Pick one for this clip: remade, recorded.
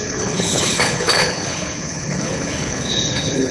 remade